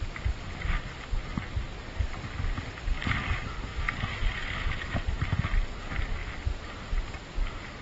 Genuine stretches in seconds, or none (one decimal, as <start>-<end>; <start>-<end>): 0.0-3.7; 4.9-7.8